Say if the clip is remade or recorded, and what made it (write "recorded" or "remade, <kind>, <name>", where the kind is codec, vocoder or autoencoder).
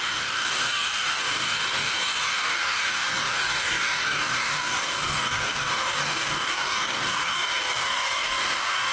remade, codec, DAC